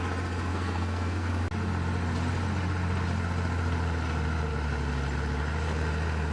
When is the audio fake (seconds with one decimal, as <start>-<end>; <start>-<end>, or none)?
0.5-1.3